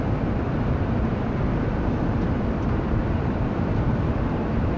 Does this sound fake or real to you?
fake